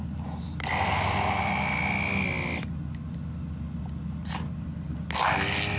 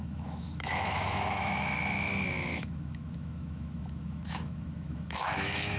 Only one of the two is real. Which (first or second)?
first